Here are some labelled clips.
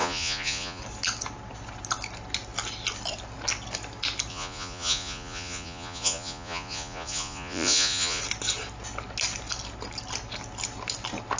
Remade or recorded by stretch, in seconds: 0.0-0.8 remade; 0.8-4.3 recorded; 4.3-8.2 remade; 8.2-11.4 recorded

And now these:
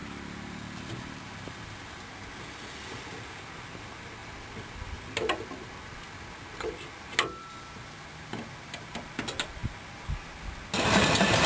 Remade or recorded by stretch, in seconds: 0.0-11.5 recorded

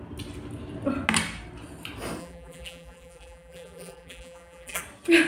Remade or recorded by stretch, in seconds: 0.0-2.2 recorded; 2.2-4.8 remade; 4.8-5.3 recorded

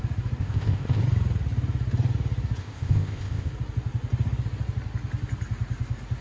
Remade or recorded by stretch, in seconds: 0.0-0.4 recorded; 0.4-1.0 remade; 1.0-2.6 recorded; 2.6-3.5 remade; 3.5-6.2 recorded

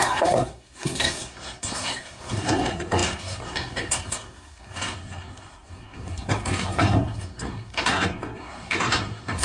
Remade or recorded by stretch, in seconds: 0.0-9.4 remade